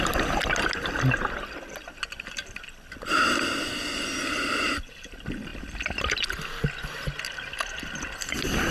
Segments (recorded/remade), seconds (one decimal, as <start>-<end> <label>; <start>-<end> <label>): 0.0-8.7 recorded